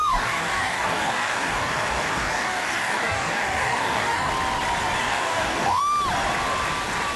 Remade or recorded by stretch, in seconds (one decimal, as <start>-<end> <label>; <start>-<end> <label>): 0.0-4.3 remade; 4.3-5.0 recorded; 5.0-5.8 remade; 5.8-7.2 recorded